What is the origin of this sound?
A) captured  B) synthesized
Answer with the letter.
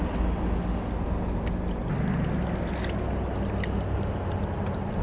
A